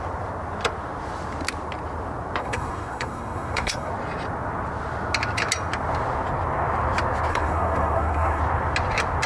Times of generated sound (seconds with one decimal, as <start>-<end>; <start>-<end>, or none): 2.4-3.9; 7.3-8.4